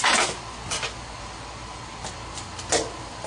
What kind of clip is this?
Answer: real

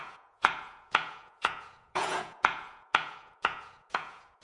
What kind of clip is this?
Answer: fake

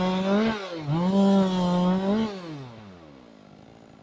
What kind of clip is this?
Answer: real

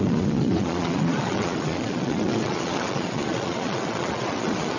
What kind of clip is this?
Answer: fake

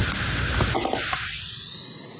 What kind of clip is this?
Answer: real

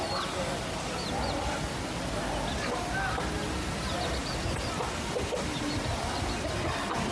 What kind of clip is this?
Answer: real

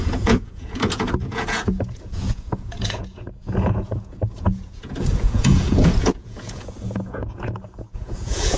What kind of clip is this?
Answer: fake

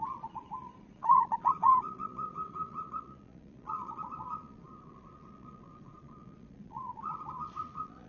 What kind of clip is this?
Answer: fake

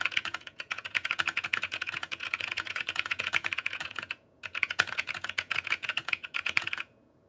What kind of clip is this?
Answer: fake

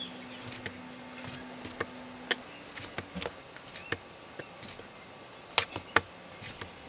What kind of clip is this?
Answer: real